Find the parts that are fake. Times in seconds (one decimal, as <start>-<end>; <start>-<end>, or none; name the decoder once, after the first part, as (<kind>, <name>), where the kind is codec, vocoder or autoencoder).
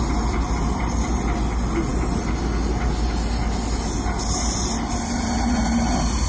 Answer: none